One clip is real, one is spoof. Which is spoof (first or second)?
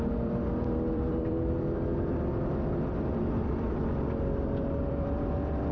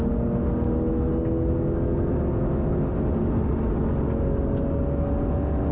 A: first